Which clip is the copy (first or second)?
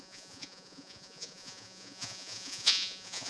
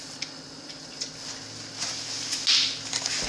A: first